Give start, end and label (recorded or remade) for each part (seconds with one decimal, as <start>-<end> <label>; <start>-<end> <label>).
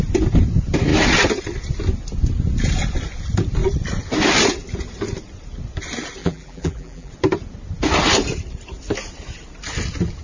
0.0-6.2 recorded; 6.2-7.1 remade; 7.1-10.2 recorded